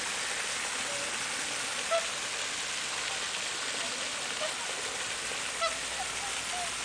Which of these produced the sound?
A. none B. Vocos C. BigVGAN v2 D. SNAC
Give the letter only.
A